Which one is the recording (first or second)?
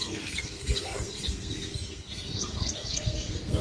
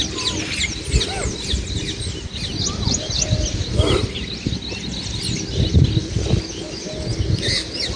second